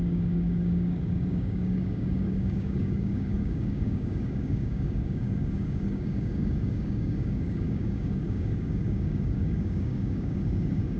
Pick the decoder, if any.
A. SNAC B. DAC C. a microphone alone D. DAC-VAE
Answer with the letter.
B